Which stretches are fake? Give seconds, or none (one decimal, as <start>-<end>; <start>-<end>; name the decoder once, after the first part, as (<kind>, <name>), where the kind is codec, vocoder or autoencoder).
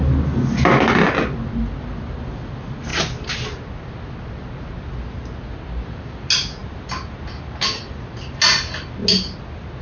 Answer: none